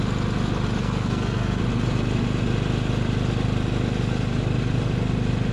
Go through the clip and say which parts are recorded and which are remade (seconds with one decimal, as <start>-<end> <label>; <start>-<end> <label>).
0.0-0.8 recorded; 0.8-1.6 remade; 1.6-5.5 recorded